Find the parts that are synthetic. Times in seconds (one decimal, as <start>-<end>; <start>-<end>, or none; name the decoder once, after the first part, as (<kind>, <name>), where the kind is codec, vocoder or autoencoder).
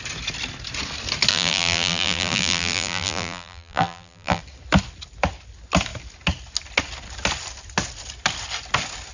1.3-4.4 (vocoder, BigVGAN v2)